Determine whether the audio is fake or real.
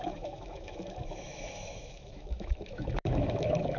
fake